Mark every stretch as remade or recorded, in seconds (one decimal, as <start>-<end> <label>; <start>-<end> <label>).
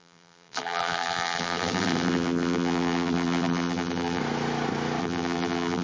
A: 0.0-4.2 remade; 4.2-5.0 recorded; 5.0-5.8 remade